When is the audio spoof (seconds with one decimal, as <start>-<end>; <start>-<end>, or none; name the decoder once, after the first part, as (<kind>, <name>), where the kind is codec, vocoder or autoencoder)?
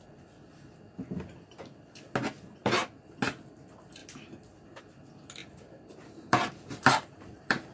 2.6-3.2 (vocoder, BigVGAN v2); 5.4-7.7